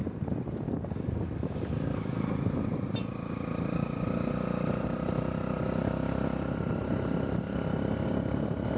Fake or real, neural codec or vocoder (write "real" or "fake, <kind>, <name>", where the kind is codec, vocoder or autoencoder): real